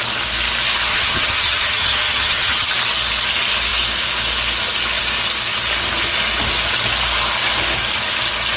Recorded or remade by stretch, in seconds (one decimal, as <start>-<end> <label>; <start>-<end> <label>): 0.0-0.9 recorded; 0.9-2.7 remade; 2.7-8.6 recorded